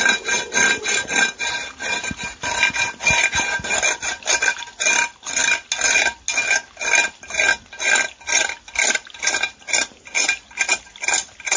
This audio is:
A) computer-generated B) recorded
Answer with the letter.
B